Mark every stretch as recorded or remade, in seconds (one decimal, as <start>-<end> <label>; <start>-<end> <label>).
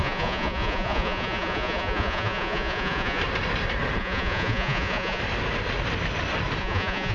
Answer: 0.0-3.2 remade; 3.2-4.0 recorded; 4.0-5.2 remade; 5.2-6.6 recorded; 6.6-7.1 remade